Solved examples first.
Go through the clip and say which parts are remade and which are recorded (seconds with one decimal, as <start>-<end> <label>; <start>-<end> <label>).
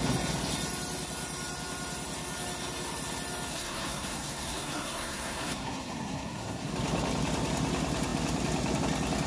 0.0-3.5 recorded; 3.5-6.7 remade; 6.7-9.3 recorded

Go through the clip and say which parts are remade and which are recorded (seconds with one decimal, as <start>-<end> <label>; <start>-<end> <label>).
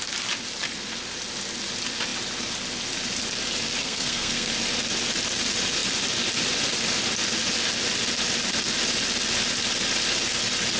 0.0-3.8 recorded; 3.8-4.5 remade; 4.5-10.8 recorded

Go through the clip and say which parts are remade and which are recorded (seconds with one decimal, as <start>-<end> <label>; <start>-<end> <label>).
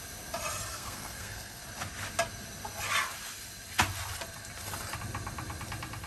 0.0-0.7 recorded; 0.7-1.6 remade; 1.6-6.1 recorded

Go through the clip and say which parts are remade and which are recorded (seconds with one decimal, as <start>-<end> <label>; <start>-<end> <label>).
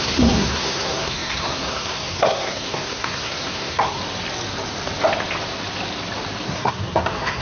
0.0-4.0 remade; 4.0-6.5 recorded; 6.5-7.4 remade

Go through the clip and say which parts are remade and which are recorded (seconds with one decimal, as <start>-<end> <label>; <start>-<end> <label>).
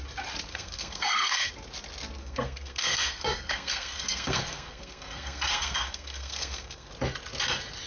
0.0-0.5 recorded; 0.5-1.5 remade; 1.5-2.2 recorded; 2.2-6.9 remade; 6.9-7.9 recorded